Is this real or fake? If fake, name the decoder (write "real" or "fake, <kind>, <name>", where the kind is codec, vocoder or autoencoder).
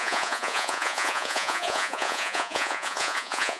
fake, vocoder, Vocos